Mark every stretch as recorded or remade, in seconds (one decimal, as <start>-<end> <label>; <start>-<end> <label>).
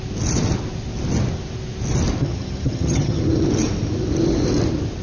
0.0-2.2 recorded; 2.2-3.2 remade; 3.2-5.0 recorded